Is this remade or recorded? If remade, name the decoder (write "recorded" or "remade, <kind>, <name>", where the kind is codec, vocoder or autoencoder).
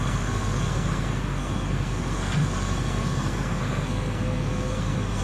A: remade, codec, SNAC